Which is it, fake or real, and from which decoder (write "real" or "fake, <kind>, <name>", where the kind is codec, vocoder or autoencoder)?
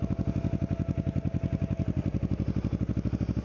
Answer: real